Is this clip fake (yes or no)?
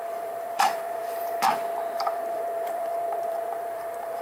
yes